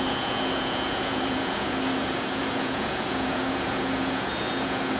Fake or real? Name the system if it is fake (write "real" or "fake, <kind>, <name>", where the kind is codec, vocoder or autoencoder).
fake, vocoder, Vocos